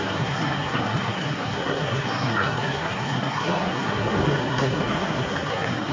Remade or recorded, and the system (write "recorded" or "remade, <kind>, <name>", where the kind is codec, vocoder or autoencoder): remade, codec, SNAC